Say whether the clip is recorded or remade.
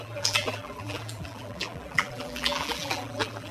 remade